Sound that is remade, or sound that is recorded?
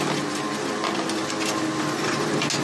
recorded